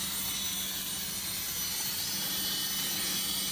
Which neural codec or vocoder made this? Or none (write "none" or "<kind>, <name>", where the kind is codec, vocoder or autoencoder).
none